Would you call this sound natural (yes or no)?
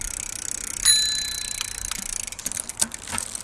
yes